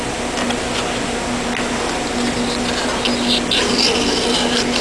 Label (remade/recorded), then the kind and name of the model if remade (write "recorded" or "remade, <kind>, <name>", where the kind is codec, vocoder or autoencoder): recorded